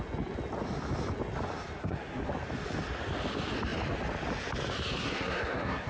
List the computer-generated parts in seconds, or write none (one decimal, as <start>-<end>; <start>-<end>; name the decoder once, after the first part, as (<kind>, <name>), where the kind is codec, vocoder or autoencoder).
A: 1.8-2.3 (codec, SNAC); 5.0-5.9